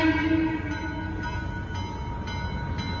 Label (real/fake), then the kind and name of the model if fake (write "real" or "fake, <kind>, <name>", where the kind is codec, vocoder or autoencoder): real